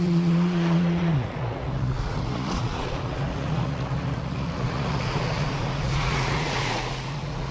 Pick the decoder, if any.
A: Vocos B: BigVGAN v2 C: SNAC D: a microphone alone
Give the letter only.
A